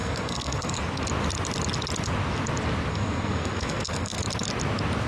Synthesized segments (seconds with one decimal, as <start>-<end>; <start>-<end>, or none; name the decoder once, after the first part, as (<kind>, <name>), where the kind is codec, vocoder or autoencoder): 0.0-0.8 (codec, SNAC); 2.9-4.2